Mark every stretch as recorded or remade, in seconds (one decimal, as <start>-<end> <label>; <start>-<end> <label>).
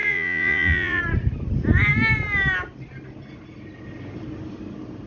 0.0-1.0 remade; 1.0-5.1 recorded